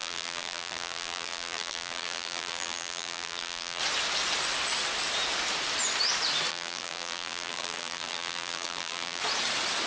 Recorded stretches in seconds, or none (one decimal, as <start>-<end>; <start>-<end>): 3.8-6.5; 9.2-9.9